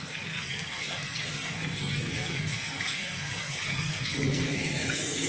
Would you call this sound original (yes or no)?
no